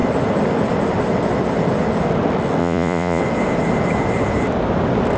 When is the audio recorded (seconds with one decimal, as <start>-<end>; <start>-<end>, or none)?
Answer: 0.0-2.6; 3.2-5.2